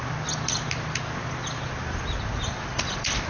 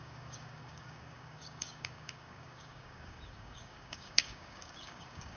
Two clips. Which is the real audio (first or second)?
first